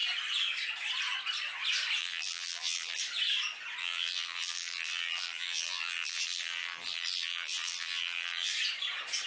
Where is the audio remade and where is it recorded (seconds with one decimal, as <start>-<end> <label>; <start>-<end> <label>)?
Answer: 0.0-2.0 recorded; 2.0-3.0 remade; 3.0-3.8 recorded; 3.8-8.5 remade; 8.5-9.3 recorded